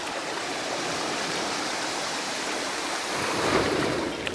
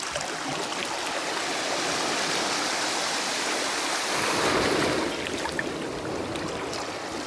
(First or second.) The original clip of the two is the second